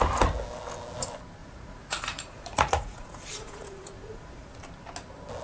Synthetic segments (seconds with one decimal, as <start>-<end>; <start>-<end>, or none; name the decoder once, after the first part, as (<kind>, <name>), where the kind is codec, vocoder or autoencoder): 1.4-4.6 (vocoder, Vocos)